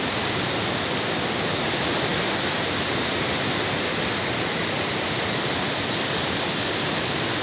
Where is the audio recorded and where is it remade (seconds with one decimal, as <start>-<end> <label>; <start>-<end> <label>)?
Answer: 0.0-7.4 recorded